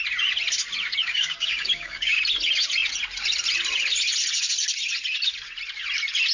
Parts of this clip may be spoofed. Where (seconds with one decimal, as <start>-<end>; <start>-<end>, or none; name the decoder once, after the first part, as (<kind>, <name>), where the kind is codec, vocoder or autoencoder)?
1.0-2.2 (codec, DAC)